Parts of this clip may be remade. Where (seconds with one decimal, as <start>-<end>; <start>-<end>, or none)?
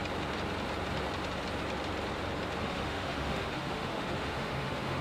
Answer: 2.6-5.0